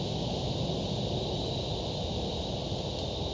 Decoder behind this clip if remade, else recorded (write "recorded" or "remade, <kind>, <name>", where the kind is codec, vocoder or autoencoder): recorded